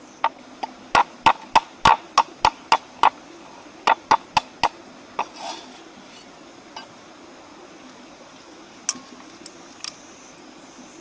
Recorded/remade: recorded